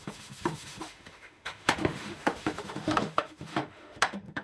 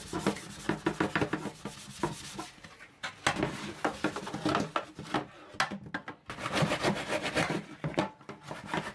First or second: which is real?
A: second